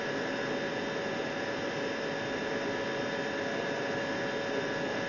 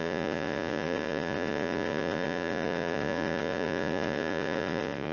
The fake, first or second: second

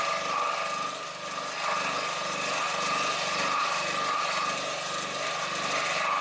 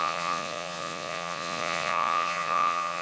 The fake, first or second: second